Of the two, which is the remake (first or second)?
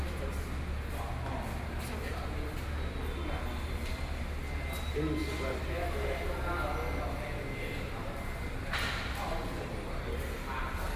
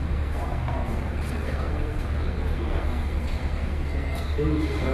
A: second